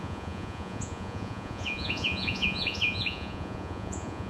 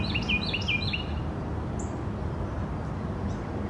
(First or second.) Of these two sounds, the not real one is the first